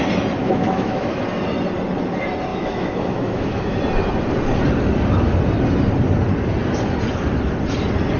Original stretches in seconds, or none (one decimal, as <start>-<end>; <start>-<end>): 0.0-0.4; 1.2-2.5; 3.8-8.2